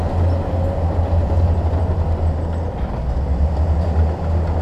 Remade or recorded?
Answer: recorded